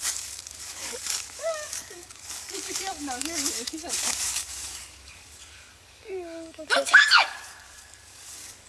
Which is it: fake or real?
fake